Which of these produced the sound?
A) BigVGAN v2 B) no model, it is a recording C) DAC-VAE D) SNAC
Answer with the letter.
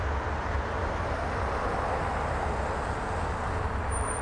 B